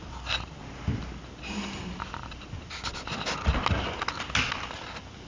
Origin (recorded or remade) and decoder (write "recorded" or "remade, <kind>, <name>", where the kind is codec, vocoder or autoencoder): recorded